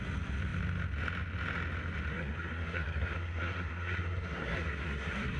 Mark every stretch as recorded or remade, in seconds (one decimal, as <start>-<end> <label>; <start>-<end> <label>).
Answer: 0.0-2.1 recorded; 2.1-5.4 remade